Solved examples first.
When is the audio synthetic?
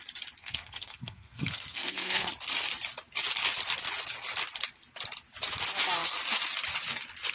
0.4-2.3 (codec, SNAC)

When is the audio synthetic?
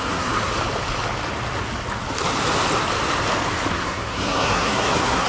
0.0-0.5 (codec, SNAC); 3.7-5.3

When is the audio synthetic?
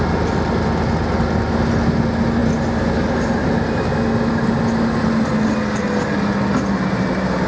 none